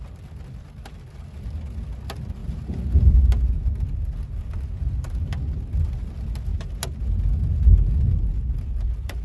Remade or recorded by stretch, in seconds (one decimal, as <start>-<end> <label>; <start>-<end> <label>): 0.0-9.2 recorded